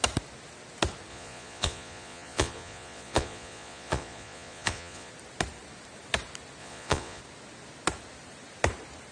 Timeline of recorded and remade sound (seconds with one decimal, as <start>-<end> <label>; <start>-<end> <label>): 0.0-1.1 recorded; 1.1-5.1 remade; 5.1-6.6 recorded; 6.6-7.2 remade; 7.2-9.1 recorded